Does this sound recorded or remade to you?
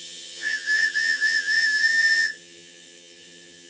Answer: remade